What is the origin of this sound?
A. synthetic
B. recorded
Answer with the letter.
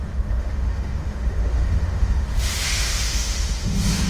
A